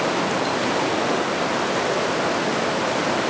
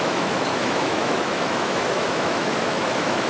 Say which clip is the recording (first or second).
first